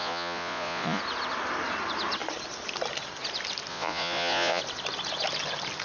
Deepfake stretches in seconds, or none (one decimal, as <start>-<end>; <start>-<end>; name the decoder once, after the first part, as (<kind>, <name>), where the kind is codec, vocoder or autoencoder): 0.0-1.0 (vocoder, Vocos); 3.7-4.6